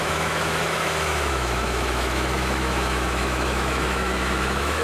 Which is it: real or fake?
fake